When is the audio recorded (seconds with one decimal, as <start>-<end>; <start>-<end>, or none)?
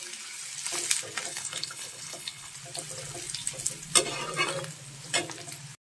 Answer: 0.0-1.3; 2.5-5.8